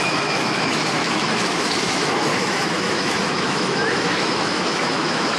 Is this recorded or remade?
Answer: remade